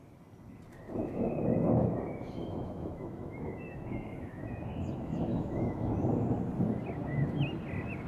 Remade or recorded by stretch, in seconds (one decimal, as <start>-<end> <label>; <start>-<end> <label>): 0.0-1.0 recorded; 1.0-5.9 remade; 5.9-8.1 recorded